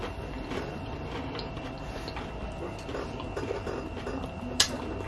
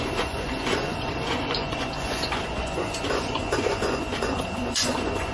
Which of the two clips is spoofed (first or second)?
second